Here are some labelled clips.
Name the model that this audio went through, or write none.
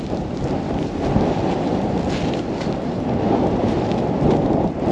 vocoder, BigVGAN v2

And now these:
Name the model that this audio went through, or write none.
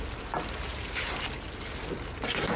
none